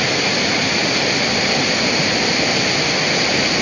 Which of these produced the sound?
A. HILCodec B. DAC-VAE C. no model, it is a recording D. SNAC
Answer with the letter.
C